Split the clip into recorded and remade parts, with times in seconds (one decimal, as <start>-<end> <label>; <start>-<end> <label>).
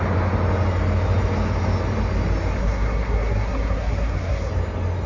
0.0-2.6 recorded; 2.6-4.5 remade; 4.5-5.1 recorded